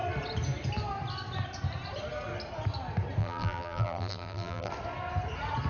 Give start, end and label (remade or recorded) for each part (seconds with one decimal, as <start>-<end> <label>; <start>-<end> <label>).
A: 0.0-3.2 recorded; 3.2-4.7 remade; 4.7-5.7 recorded